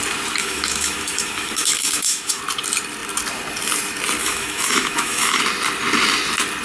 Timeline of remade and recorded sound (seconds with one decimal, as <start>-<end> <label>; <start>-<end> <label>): 0.0-0.4 recorded; 0.4-2.4 remade; 2.4-4.2 recorded; 4.2-5.4 remade; 5.4-6.6 recorded